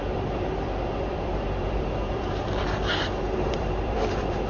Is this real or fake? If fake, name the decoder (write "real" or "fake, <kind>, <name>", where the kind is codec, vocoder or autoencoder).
fake, vocoder, BigVGAN v2